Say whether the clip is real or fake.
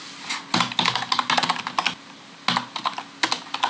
real